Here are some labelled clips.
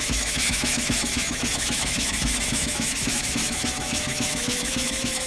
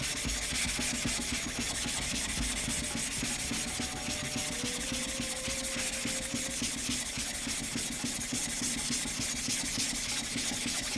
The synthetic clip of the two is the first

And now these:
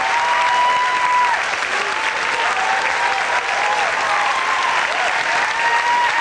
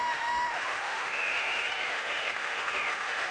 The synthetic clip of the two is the second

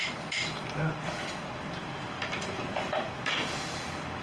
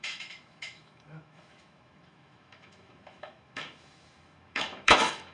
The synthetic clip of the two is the second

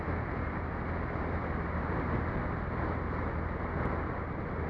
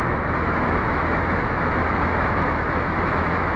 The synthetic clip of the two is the second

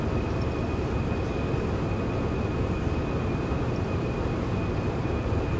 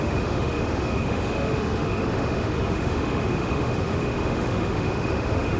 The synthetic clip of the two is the second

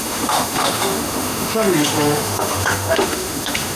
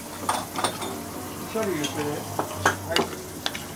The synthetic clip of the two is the first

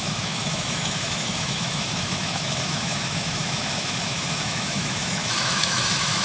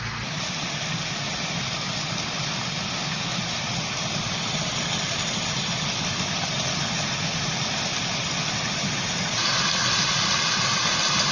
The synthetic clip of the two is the first